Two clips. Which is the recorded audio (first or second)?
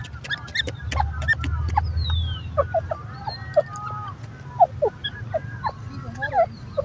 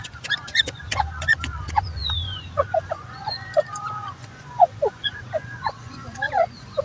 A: first